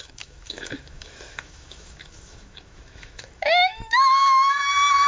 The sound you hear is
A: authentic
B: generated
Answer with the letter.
B